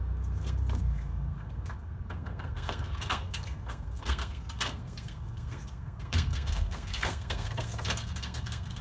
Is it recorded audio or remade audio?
remade